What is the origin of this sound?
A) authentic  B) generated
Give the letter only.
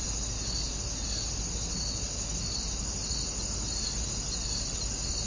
A